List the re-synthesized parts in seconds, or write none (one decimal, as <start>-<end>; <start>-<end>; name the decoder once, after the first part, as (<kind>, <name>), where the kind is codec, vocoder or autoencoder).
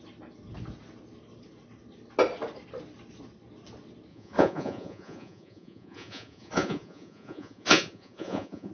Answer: 4.1-8.7 (vocoder, Vocos)